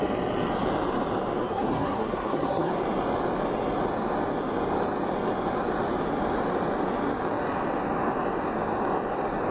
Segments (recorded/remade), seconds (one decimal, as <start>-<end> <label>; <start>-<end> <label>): 0.0-1.4 recorded; 1.4-2.7 remade; 2.7-9.5 recorded